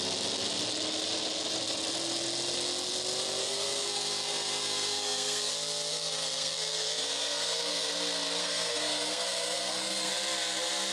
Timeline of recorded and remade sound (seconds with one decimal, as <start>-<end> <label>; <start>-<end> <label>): 0.0-3.4 recorded; 3.4-5.5 remade; 5.5-5.9 recorded; 5.9-7.9 remade; 7.9-8.4 recorded; 8.4-10.1 remade; 10.1-10.9 recorded